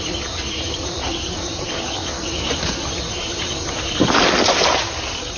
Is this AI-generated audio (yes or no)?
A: no